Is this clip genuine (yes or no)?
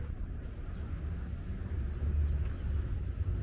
yes